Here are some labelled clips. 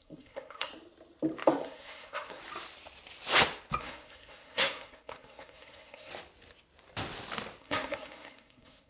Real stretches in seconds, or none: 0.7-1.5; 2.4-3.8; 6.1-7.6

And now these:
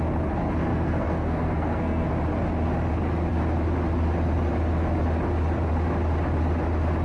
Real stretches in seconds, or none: 0.0-0.7; 2.1-7.0

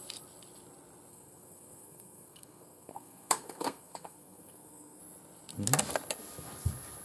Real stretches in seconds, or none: 0.0-1.1; 5.0-7.0

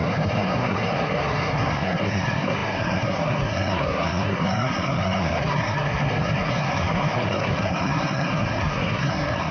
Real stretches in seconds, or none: none

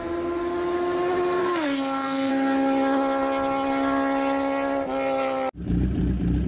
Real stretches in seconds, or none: 0.0-1.4; 2.3-6.5